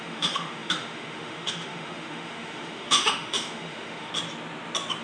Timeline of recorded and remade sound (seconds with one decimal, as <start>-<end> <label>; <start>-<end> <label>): 0.0-4.1 remade; 4.1-5.0 recorded